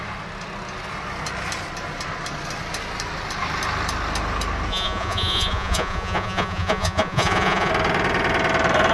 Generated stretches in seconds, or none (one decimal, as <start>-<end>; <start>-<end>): 4.7-7.7

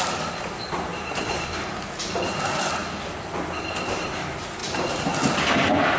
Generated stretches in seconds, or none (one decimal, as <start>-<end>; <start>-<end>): 0.9-1.5

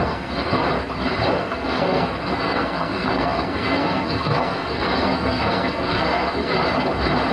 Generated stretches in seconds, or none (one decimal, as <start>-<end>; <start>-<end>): 0.0-0.6; 1.3-6.6

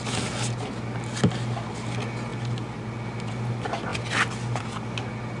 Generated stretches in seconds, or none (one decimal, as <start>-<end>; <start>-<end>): none

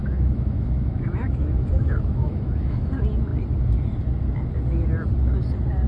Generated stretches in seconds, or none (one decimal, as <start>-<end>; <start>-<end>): 0.0-2.9

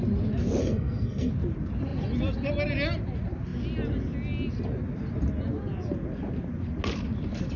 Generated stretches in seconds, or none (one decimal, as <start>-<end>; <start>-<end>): 0.6-1.3

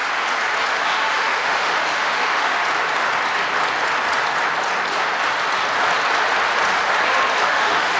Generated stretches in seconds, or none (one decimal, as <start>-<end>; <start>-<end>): 0.8-2.6; 7.4-8.0